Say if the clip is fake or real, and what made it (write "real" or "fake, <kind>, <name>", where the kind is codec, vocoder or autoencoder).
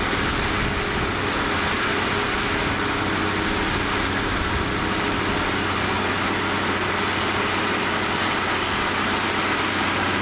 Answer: real